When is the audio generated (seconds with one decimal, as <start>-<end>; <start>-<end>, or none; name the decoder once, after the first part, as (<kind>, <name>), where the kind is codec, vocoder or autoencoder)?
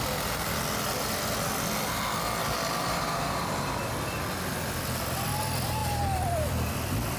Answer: 2.8-3.9 (vocoder, BigVGAN v2)